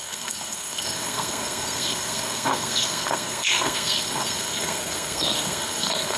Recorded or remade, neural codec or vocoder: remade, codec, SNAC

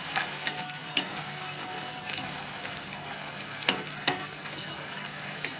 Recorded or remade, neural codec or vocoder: remade, codec, SNAC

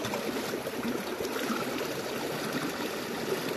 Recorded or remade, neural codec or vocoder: recorded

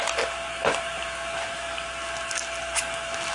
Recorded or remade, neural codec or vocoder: recorded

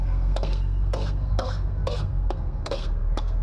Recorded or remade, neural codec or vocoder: remade, codec, SNAC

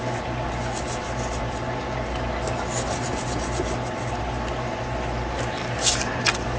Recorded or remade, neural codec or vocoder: recorded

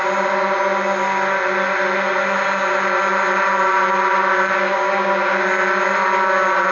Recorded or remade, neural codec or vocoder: recorded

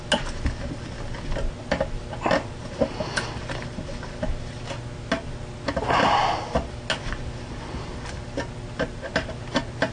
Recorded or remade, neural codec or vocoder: recorded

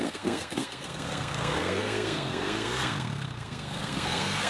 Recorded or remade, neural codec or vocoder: remade, codec, SNAC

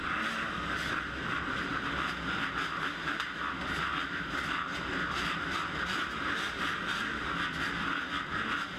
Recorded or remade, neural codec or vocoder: recorded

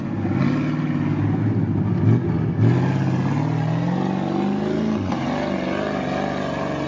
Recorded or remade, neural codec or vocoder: recorded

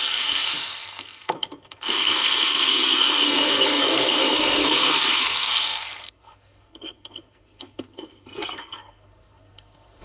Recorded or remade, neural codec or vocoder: remade, codec, SNAC